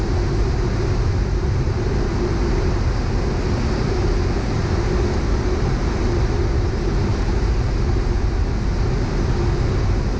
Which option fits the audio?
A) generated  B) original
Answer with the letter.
A